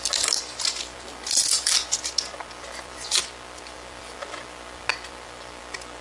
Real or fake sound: real